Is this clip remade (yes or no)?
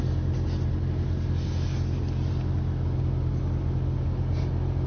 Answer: no